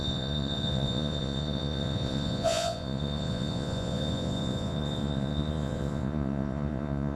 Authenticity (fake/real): fake